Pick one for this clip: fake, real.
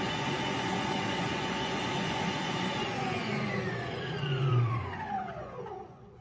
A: fake